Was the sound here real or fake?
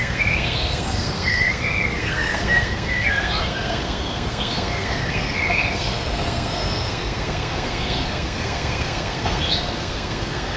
fake